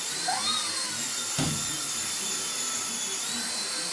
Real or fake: real